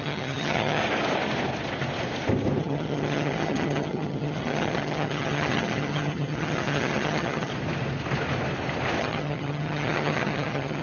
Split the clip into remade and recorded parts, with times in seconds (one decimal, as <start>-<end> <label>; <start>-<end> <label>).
0.0-0.8 remade; 0.8-2.6 recorded; 2.6-7.5 remade; 7.5-9.0 recorded; 9.0-10.8 remade